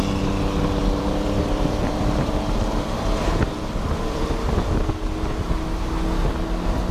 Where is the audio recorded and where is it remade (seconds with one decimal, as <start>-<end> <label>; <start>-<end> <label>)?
0.0-0.8 recorded; 0.8-4.9 remade; 4.9-6.9 recorded